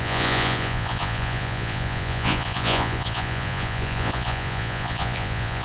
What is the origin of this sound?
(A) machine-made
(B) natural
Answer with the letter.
A